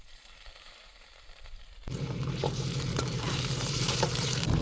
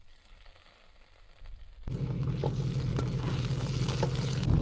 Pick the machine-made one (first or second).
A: first